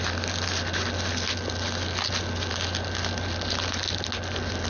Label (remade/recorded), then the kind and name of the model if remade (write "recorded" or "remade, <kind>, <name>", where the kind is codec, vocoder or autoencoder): recorded